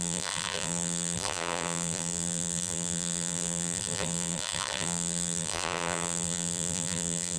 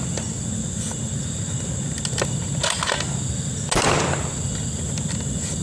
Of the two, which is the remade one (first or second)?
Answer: first